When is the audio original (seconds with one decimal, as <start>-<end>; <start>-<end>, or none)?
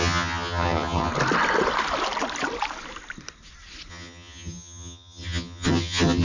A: 1.1-3.9